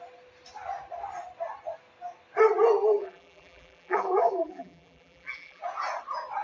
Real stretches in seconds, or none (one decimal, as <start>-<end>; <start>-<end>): 0.0-3.0; 5.6-6.4